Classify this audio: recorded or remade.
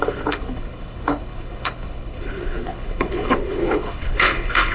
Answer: remade